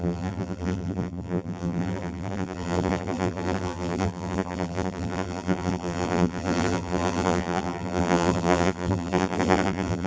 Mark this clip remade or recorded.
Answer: remade